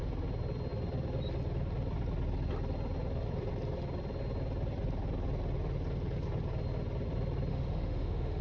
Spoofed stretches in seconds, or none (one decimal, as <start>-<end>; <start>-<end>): 7.5-8.4